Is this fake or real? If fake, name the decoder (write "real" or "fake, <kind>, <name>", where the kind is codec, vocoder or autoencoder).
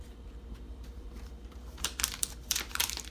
fake, vocoder, BigVGAN v2